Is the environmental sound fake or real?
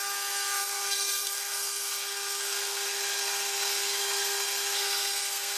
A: fake